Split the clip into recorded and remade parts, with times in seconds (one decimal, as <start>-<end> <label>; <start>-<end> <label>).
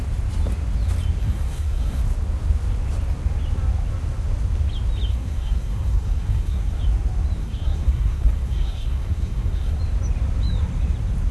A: 0.0-1.2 recorded; 1.2-2.0 remade; 2.0-5.1 recorded; 5.1-6.8 remade; 6.8-7.4 recorded; 7.4-9.8 remade; 9.8-11.3 recorded